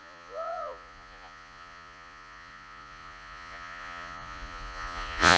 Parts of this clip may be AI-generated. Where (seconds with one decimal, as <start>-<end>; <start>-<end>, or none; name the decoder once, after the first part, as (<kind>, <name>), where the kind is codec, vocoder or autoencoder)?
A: 0.0-5.4 (vocoder, Vocos)